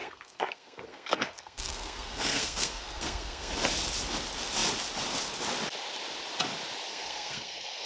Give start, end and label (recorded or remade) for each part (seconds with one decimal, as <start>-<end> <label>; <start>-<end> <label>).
0.0-3.5 remade; 3.5-6.9 recorded; 6.9-7.9 remade